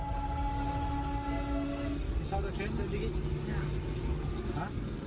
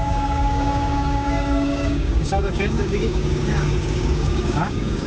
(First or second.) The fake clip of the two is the second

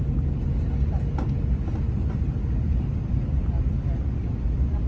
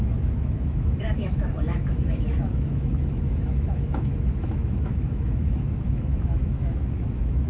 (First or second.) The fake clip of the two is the second